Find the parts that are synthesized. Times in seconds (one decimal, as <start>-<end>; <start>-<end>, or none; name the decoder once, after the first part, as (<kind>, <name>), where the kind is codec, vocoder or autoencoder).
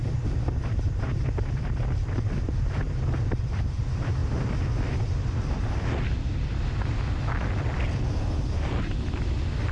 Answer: 0.0-3.8 (vocoder, BigVGAN v2)